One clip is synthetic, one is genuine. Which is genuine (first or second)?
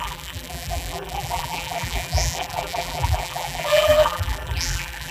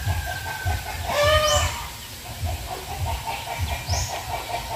second